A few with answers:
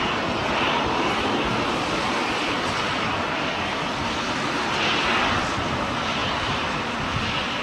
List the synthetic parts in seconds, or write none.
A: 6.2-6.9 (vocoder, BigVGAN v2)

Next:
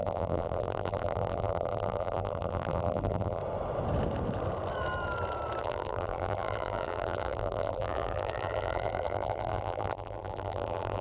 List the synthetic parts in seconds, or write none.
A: 0.0-3.4 (vocoder, BigVGAN v2); 5.6-11.0

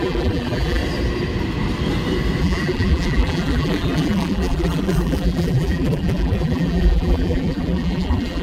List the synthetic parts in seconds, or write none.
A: 0.0-0.8 (vocoder, BigVGAN v2); 2.4-8.4